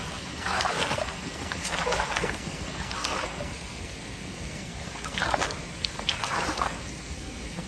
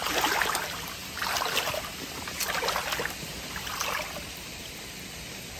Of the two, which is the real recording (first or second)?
second